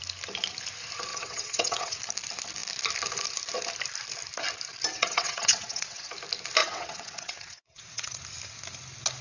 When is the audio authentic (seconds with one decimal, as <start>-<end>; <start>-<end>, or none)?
0.0-1.1; 2.0-4.9; 6.1-6.6; 8.2-9.2